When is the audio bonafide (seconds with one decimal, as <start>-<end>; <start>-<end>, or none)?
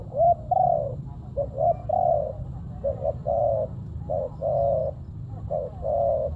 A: 0.0-6.4